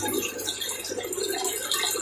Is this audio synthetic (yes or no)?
no